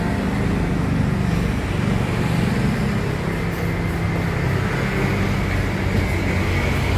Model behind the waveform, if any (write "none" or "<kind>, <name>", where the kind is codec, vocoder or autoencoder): none